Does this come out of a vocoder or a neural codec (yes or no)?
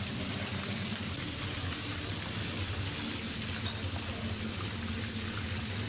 no